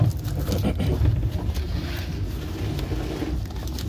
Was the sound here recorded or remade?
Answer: recorded